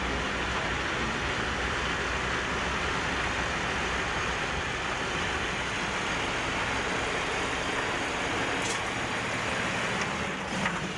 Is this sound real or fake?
real